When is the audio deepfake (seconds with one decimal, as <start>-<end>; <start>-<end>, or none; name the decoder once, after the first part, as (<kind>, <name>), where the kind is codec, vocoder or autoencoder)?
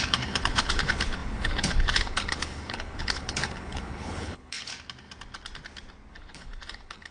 0.0-4.7 (codec, HILCodec); 6.1-7.1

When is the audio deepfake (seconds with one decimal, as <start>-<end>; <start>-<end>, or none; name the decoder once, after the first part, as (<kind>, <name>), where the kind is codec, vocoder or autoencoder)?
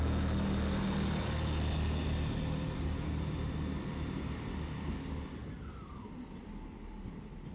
none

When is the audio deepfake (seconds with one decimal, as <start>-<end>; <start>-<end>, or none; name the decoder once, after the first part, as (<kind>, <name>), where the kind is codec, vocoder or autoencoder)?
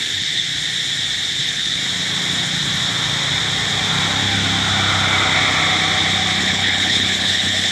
0.0-0.5 (codec, HILCodec); 1.3-1.8; 6.4-7.7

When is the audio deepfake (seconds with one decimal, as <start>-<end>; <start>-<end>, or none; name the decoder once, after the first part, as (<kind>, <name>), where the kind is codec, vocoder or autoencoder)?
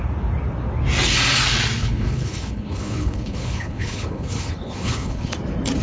1.8-5.3 (codec, HILCodec)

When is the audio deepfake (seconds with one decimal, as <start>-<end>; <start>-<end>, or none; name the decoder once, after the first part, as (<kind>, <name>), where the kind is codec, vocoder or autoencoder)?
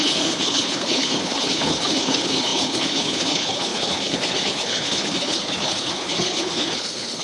0.0-7.2 (codec, HILCodec)